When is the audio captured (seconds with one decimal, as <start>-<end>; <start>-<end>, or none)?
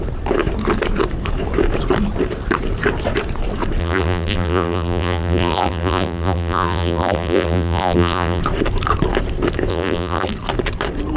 0.0-3.8; 8.4-9.7; 10.3-11.2